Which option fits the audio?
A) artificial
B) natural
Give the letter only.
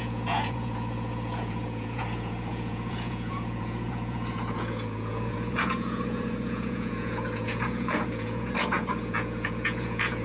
A